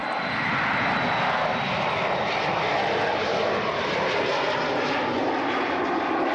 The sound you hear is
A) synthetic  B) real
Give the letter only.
B